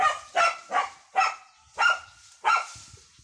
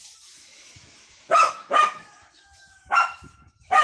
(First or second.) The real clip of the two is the first